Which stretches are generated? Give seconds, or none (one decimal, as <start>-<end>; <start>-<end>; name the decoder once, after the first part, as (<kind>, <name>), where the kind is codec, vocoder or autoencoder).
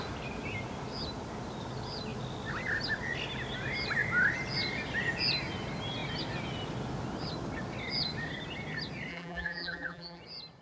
9.1-10.2 (vocoder, BigVGAN v2)